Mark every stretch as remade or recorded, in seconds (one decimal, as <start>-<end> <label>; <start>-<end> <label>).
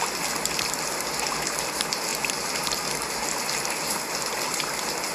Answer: 0.0-5.1 recorded